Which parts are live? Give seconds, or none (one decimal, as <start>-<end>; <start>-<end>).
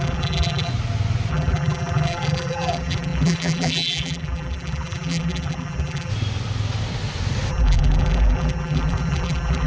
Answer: 0.7-1.3; 6.1-7.5